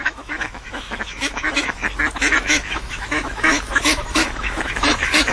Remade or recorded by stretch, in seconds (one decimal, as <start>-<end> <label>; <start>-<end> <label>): 0.0-1.8 remade; 1.8-2.4 recorded; 2.4-5.3 remade